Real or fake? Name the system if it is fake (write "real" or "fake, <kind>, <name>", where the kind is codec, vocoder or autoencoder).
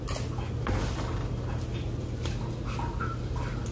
real